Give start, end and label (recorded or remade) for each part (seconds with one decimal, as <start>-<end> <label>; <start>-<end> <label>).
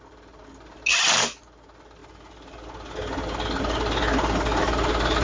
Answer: 0.0-5.2 recorded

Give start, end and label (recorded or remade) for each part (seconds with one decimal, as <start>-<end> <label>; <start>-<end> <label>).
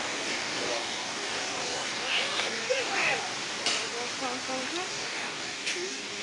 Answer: 0.0-3.3 remade; 3.3-4.9 recorded; 4.9-6.2 remade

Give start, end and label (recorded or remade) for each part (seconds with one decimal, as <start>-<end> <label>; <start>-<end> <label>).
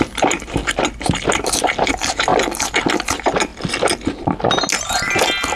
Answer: 0.0-2.3 remade; 2.3-2.9 recorded; 2.9-3.5 remade; 3.5-4.8 recorded; 4.8-5.6 remade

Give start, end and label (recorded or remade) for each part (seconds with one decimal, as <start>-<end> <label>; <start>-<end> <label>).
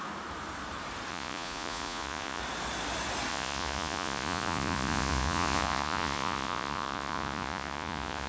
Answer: 0.0-1.1 recorded; 1.1-2.4 remade; 2.4-3.3 recorded; 3.3-8.3 remade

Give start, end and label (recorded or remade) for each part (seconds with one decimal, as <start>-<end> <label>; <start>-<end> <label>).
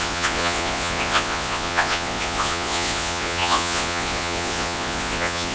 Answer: 0.0-5.5 remade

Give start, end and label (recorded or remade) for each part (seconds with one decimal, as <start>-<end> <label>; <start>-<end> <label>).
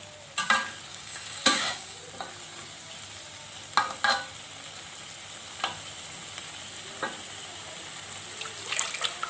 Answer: 0.0-0.9 recorded; 0.9-2.0 remade; 2.0-9.3 recorded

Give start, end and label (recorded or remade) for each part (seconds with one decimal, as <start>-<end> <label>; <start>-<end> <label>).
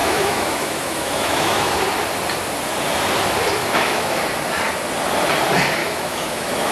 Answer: 0.0-1.8 remade; 1.8-3.6 recorded; 3.6-4.2 remade; 4.2-5.8 recorded; 5.8-6.7 remade